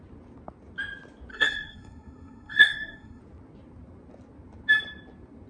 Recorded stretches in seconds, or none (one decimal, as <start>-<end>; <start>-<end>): 0.0-1.3; 3.2-5.5